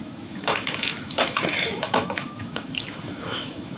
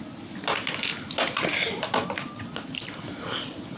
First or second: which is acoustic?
second